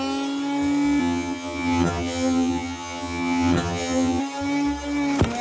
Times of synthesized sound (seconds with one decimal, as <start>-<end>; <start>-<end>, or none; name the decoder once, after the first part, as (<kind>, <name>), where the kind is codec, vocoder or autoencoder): 1.0-4.2 (vocoder, HiFi-GAN)